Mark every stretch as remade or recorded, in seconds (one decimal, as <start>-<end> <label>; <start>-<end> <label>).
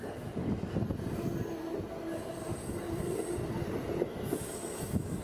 0.0-4.1 recorded; 4.1-5.2 remade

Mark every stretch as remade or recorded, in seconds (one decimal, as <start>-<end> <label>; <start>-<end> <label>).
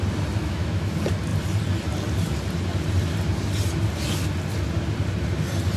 0.0-0.4 recorded; 0.4-0.9 remade; 0.9-5.8 recorded